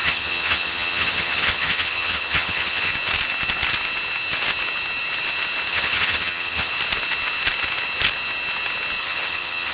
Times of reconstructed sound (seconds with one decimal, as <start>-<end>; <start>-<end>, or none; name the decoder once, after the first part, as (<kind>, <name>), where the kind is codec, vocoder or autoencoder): 0.0-2.9 (vocoder, HiFi-GAN); 5.7-6.7; 9.0-9.7